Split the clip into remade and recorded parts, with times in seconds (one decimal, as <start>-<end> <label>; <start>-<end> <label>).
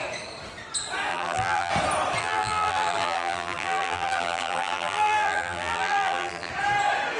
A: 0.0-1.1 recorded; 1.1-1.7 remade; 1.7-2.2 recorded; 2.2-6.5 remade; 6.5-7.2 recorded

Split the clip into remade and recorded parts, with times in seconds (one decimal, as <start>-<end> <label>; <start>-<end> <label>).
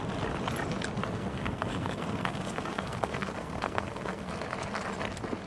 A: 0.0-1.0 recorded; 1.0-4.3 remade; 4.3-5.5 recorded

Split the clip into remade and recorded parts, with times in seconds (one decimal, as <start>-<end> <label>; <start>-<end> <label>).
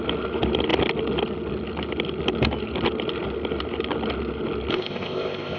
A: 0.0-4.7 recorded; 4.7-5.6 remade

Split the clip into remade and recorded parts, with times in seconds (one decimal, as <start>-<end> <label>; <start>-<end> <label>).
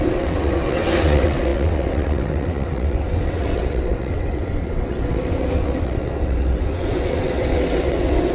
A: 0.0-8.3 remade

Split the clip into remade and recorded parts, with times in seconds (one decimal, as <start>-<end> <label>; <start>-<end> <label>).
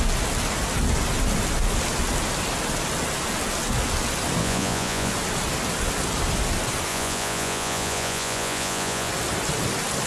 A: 0.0-4.4 recorded; 4.4-5.1 remade; 5.1-6.9 recorded; 6.9-9.1 remade; 9.1-10.1 recorded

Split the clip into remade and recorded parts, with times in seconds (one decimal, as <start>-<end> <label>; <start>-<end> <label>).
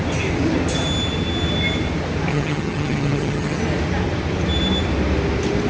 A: 0.0-2.3 recorded; 2.3-3.6 remade; 3.6-5.7 recorded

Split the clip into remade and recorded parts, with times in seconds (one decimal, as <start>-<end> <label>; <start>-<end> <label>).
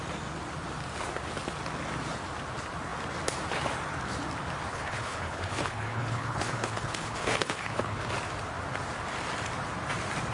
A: 0.0-4.7 recorded; 4.7-8.1 remade; 8.1-10.3 recorded